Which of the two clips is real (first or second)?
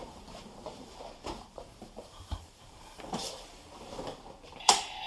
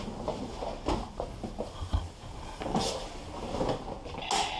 second